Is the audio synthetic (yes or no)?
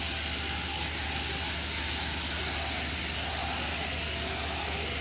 no